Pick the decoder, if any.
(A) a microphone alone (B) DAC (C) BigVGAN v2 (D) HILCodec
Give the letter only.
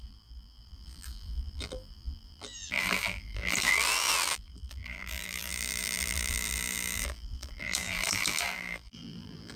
C